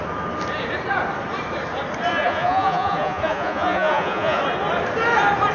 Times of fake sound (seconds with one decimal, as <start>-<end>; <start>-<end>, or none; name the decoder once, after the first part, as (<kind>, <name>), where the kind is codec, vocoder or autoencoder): 2.1-4.4 (vocoder, Vocos)